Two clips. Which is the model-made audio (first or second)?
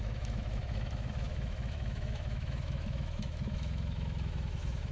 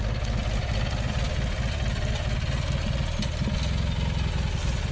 first